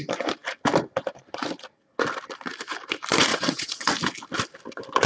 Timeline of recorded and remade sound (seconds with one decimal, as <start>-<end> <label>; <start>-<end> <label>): 0.0-3.3 recorded; 3.3-3.9 remade; 3.9-5.1 recorded